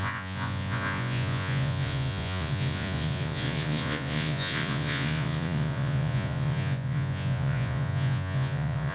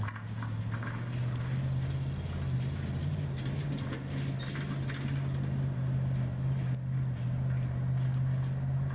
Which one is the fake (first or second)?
first